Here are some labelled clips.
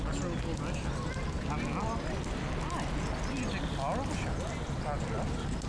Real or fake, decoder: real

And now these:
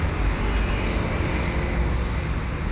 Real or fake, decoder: real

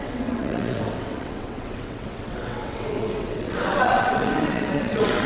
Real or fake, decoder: fake, vocoder, WaveNeXt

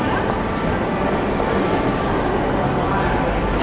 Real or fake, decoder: real